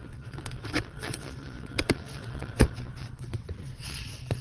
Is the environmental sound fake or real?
fake